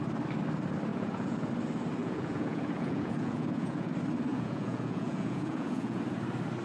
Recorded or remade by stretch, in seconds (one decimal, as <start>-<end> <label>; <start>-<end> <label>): 0.0-0.9 recorded; 0.9-1.5 remade; 1.5-2.0 recorded; 2.0-3.9 remade; 3.9-4.3 recorded; 4.3-6.0 remade; 6.0-6.6 recorded